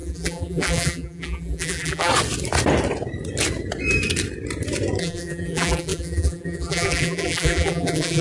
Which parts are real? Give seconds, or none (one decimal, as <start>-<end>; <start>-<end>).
2.1-5.0